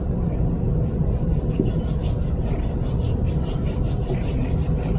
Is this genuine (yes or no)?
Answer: yes